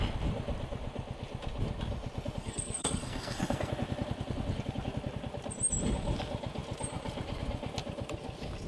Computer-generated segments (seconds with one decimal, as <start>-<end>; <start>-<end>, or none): 2.4-3.7